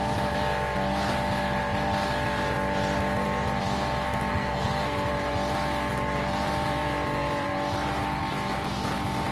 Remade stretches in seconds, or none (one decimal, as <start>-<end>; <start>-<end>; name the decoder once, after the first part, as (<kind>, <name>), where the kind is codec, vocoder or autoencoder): 4.3-5.1 (codec, SNAC)